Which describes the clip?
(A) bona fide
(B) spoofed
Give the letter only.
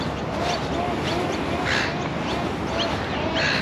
A